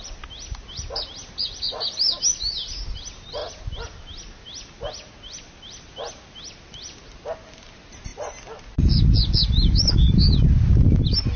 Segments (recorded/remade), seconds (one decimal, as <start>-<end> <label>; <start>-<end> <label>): 0.0-11.4 recorded